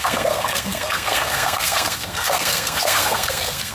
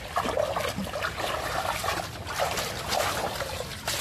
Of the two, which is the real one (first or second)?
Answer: second